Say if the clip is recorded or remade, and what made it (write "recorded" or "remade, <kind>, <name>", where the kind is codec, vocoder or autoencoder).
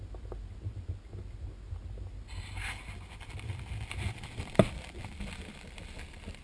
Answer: recorded